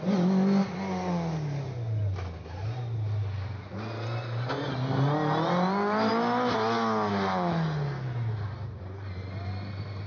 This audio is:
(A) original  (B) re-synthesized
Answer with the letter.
A